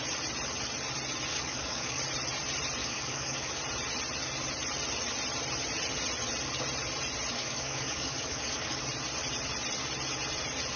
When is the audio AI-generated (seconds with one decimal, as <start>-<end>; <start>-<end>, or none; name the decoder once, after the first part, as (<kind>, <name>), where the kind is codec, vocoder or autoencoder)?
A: 1.3-2.0 (codec, DAC); 2.8-3.5; 7.3-8.8